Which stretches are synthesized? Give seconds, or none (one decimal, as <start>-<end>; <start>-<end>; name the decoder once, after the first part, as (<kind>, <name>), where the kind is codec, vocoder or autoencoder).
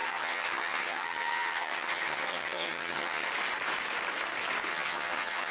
0.0-3.3 (vocoder, HiFi-GAN); 4.7-5.5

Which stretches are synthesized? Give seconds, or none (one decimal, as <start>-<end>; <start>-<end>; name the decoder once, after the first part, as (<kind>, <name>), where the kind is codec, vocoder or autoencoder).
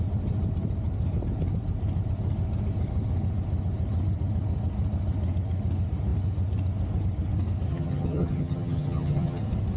7.7-9.4 (vocoder, HiFi-GAN)